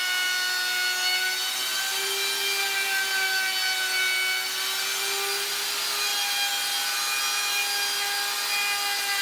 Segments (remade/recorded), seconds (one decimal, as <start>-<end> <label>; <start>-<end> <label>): 0.0-9.2 recorded